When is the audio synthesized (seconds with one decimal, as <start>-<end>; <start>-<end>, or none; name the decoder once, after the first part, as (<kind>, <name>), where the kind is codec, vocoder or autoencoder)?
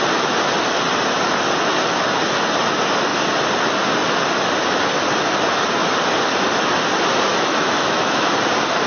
7.3-8.4 (autoencoder, DAC-VAE)